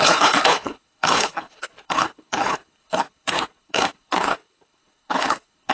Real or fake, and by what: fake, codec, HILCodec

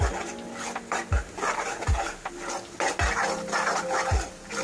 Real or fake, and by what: real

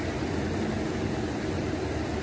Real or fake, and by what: real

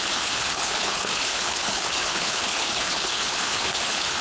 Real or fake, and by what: fake, codec, HILCodec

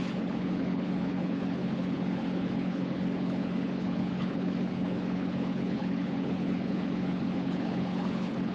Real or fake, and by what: fake, codec, HILCodec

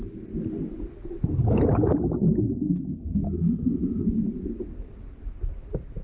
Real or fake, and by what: real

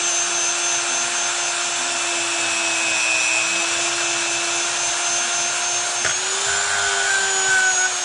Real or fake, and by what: real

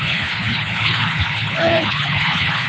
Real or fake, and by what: fake, codec, HILCodec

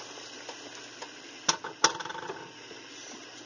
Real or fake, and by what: real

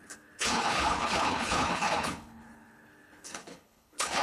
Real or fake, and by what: fake, codec, HILCodec